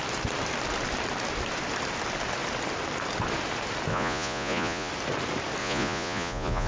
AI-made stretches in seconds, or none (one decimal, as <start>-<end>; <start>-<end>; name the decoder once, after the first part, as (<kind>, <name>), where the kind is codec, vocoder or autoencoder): 3.9-4.9 (vocoder, Vocos); 5.6-6.7